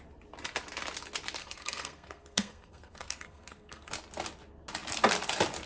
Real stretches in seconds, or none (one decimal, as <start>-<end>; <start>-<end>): 0.0-1.4; 3.9-5.7